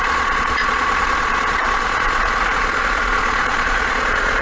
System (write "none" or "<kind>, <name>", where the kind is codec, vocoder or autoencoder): vocoder, Vocos